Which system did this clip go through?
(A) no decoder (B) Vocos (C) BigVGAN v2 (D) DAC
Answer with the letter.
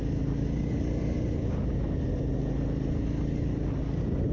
A